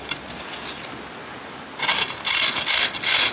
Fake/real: real